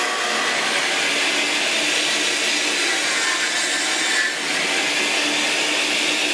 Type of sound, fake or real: real